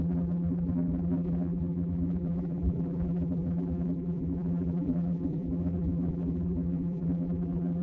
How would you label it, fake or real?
fake